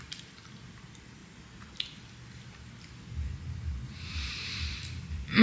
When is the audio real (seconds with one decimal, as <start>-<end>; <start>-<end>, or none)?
1.2-4.4